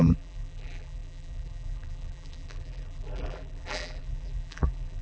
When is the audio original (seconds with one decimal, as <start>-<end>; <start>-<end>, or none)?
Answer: none